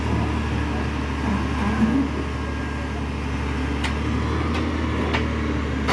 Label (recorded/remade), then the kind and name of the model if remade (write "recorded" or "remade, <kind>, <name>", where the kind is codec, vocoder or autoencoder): recorded